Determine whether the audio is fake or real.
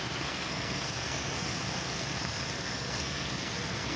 fake